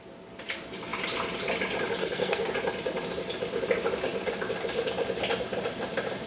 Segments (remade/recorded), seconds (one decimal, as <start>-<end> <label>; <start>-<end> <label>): 0.0-2.0 recorded; 2.0-2.5 remade; 2.5-6.3 recorded